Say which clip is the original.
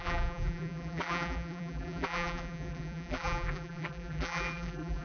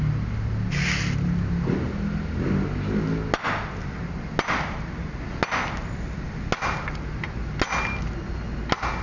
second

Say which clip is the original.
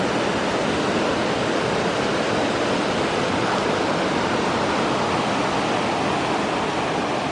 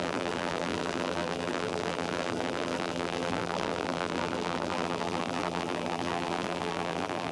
first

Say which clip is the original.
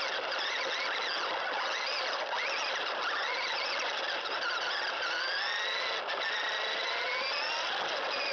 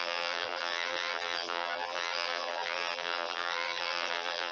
first